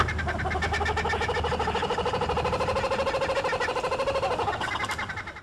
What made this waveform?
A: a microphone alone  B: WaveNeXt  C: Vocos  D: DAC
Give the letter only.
A